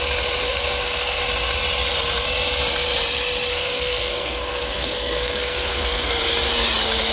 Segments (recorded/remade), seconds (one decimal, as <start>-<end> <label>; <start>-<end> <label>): 0.0-0.4 recorded; 0.4-1.2 remade; 1.2-3.5 recorded; 3.5-6.2 remade; 6.2-7.1 recorded